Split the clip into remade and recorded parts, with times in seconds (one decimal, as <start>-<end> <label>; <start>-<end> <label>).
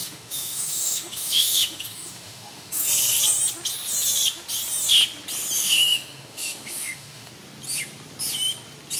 0.0-2.9 remade; 2.9-5.6 recorded; 5.6-7.3 remade; 7.3-9.0 recorded